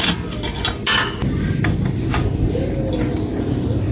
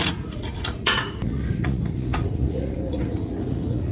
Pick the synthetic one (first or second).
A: second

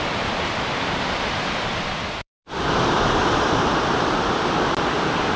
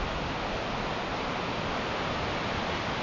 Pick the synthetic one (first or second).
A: first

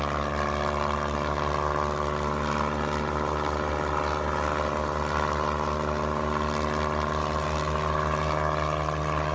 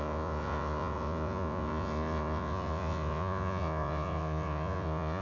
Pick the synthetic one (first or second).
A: second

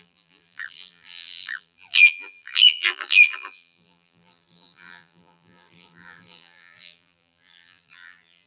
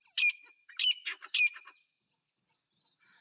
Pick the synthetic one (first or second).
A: first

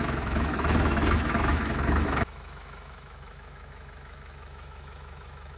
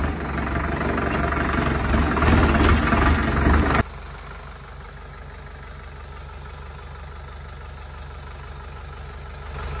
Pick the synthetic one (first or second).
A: first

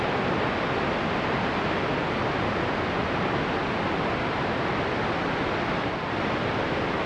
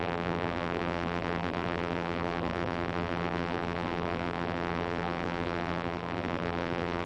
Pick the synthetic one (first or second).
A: second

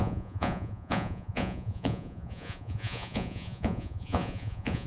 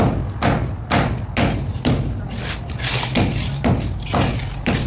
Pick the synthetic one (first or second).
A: first